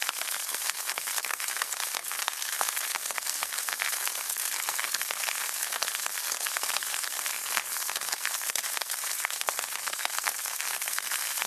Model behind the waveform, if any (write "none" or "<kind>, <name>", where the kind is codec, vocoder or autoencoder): codec, SNAC